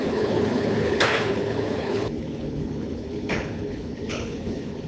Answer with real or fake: fake